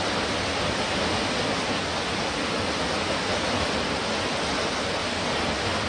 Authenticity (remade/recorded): recorded